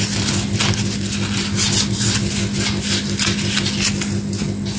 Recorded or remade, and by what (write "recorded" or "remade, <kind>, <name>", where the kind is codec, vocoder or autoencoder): recorded